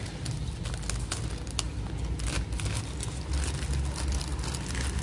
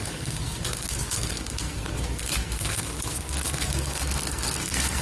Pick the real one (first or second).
first